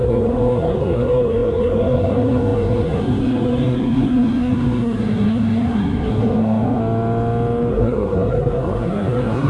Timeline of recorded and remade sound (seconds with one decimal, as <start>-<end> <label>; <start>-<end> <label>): 0.0-6.8 remade; 6.8-7.7 recorded; 7.7-9.5 remade